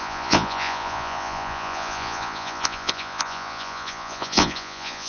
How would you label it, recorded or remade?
remade